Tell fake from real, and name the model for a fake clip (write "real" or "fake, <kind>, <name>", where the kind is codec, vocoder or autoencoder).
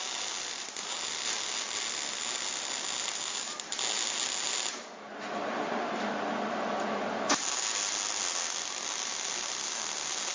real